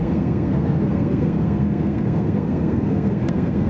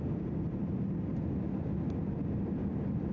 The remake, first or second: first